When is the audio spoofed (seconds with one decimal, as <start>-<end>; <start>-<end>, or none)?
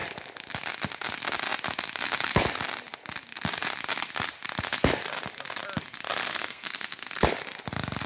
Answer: 6.2-7.4